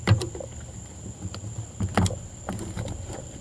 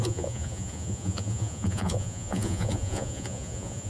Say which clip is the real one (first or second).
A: first